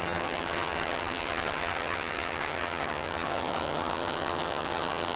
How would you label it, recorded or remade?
remade